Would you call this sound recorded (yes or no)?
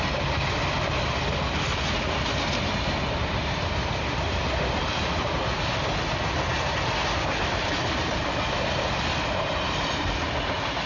yes